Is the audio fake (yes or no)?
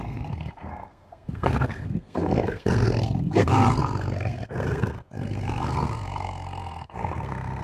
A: yes